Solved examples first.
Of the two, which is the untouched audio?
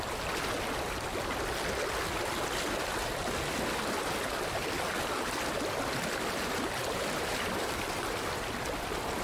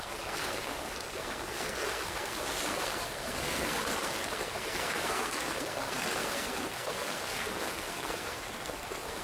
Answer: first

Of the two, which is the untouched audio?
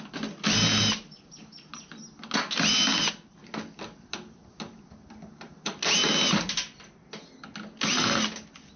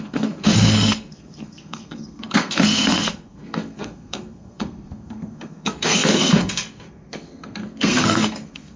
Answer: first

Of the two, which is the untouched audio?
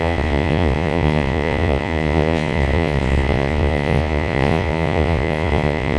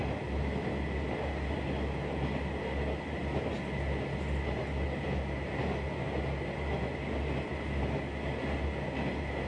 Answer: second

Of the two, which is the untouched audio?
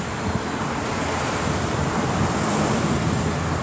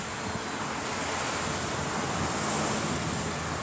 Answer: second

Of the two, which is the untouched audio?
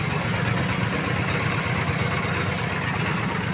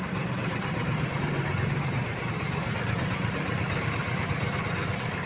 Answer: first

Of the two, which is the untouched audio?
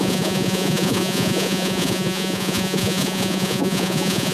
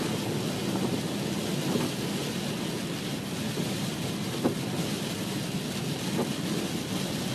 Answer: second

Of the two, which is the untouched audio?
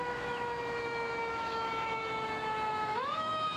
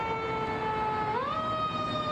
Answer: second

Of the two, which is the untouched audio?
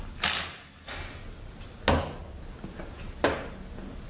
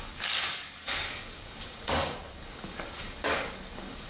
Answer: first